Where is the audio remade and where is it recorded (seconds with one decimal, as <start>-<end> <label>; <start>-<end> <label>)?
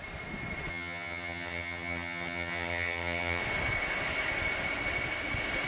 0.0-0.7 recorded; 0.7-3.4 remade; 3.4-5.7 recorded